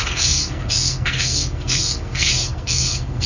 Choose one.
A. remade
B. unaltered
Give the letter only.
A